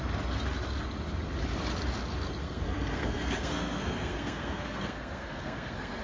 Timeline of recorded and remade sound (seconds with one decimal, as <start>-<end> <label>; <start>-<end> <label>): 0.0-2.4 recorded; 2.4-6.0 remade